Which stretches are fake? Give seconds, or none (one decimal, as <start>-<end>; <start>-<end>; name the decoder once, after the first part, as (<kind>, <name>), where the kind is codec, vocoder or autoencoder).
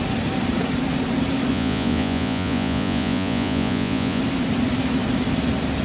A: 1.5-4.2 (vocoder, Vocos)